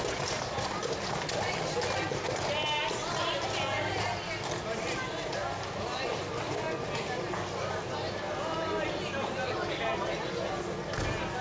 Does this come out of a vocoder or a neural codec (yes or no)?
no